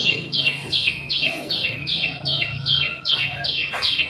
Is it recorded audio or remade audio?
remade